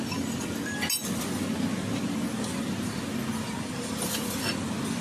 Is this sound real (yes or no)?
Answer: yes